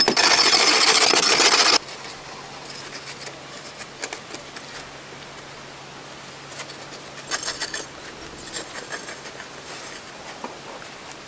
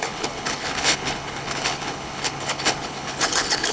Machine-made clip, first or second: second